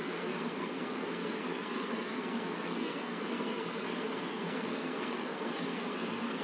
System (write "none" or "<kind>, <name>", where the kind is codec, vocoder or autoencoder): codec, SNAC